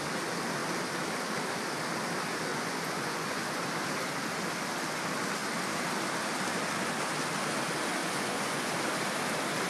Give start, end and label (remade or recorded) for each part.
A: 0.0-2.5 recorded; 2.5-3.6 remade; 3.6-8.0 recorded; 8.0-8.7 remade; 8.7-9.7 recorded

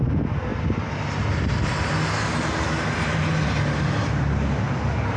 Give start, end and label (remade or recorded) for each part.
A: 0.0-5.2 recorded

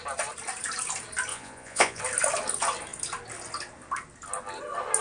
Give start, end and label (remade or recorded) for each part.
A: 0.0-1.3 recorded; 1.3-2.0 remade; 2.0-5.0 recorded

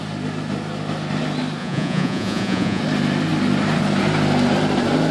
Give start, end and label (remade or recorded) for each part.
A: 0.0-1.6 recorded; 1.6-2.8 remade; 2.8-5.1 recorded